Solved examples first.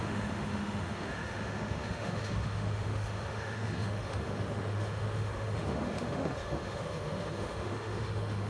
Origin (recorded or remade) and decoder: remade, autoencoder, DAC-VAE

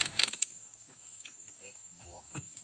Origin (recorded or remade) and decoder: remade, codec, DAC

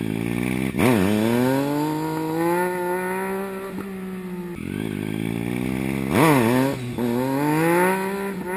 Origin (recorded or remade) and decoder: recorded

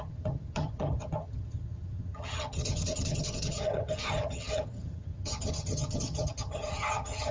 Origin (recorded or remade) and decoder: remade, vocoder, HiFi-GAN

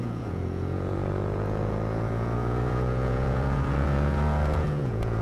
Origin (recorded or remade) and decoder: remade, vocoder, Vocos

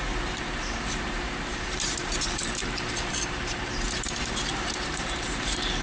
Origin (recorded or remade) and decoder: remade, vocoder, BigVGAN v2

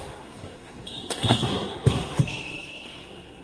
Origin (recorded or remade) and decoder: remade, codec, SNAC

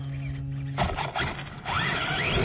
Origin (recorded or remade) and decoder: recorded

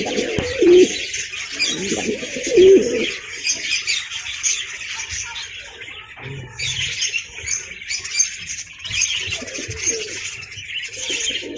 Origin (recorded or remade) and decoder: recorded